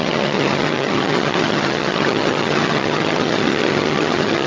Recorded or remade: remade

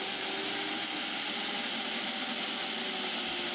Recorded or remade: recorded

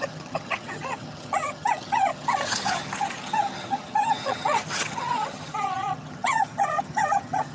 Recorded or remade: remade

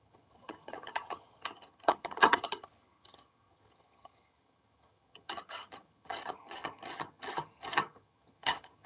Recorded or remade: remade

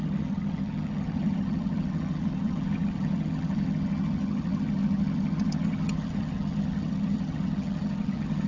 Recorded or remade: remade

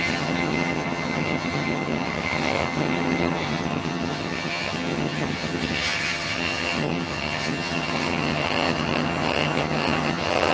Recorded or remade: remade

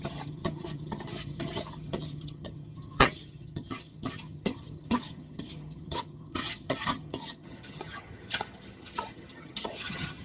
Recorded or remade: remade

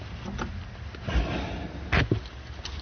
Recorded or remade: recorded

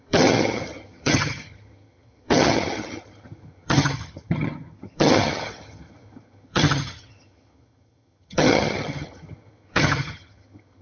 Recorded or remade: remade